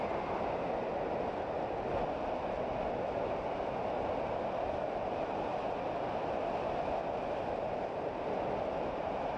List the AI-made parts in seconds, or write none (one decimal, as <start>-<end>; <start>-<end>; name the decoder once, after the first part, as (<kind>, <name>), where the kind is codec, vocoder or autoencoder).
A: none